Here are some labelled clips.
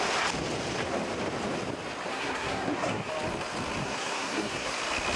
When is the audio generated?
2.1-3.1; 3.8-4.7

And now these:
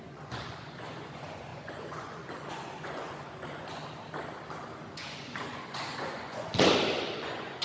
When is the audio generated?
0.0-3.8; 4.9-6.5; 7.0-7.6

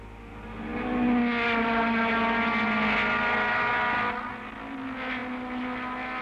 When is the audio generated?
none

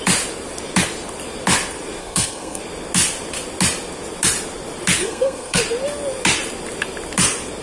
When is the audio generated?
2.0-2.6; 5.0-5.6